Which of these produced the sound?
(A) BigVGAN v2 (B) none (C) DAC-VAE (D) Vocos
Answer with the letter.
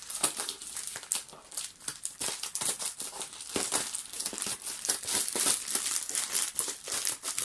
A